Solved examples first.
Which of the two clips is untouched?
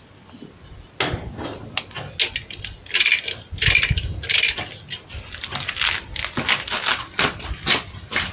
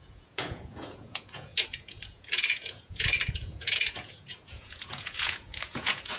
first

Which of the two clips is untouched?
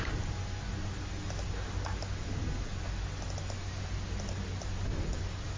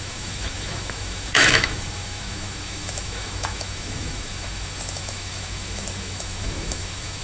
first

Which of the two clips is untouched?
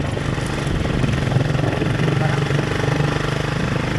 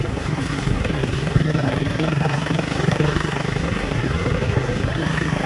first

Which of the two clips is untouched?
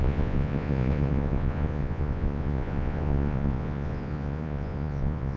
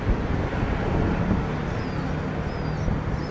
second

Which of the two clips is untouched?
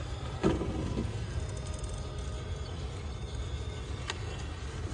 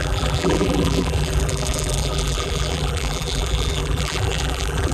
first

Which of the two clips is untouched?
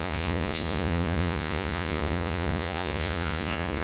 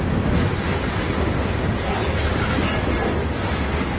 second